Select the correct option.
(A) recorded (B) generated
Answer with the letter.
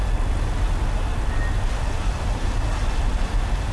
A